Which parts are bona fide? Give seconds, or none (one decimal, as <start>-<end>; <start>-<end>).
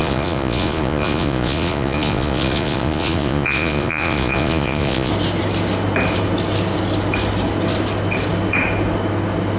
5.1-9.6